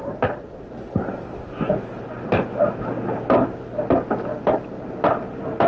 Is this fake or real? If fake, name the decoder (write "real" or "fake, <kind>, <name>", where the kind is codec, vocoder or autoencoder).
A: real